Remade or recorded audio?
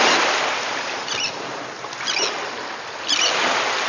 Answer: recorded